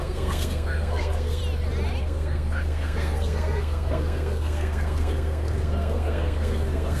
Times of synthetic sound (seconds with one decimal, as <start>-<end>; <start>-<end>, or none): 0.0-1.4; 2.0-7.0